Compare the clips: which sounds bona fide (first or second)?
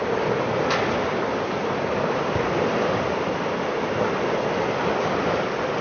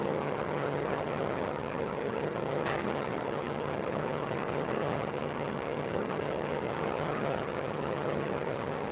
first